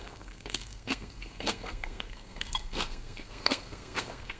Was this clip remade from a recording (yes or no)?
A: yes